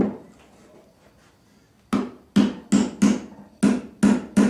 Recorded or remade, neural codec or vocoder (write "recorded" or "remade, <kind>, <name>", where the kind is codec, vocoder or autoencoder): recorded